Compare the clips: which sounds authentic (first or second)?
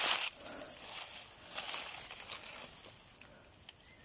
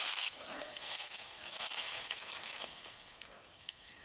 first